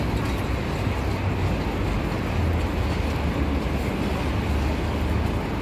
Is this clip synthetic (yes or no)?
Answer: no